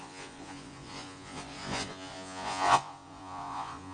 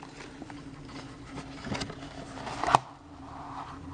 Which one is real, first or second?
second